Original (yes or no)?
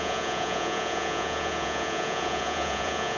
no